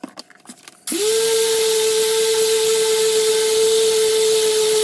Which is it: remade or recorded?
recorded